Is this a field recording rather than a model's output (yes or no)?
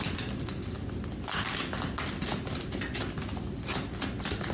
yes